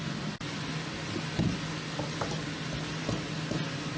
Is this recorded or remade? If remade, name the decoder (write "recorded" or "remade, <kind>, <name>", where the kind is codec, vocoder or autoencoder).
recorded